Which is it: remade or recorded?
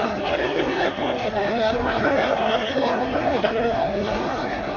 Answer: remade